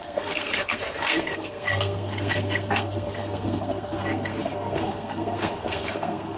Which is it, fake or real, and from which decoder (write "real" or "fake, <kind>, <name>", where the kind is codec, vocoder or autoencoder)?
fake, codec, SNAC